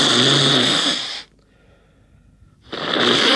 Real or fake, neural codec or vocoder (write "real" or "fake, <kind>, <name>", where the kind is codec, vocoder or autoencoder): real